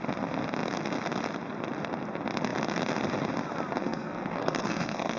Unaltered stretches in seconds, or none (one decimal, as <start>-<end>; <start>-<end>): 0.0-3.8